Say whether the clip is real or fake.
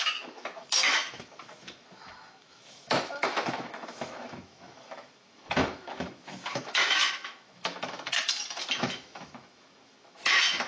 fake